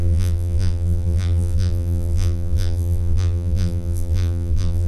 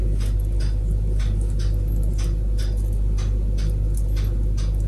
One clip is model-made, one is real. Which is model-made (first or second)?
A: first